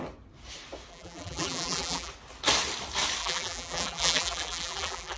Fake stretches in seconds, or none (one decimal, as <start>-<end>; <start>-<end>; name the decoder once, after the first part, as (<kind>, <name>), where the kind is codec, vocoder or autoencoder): 0.9-2.1 (vocoder, BigVGAN v2); 3.2-5.2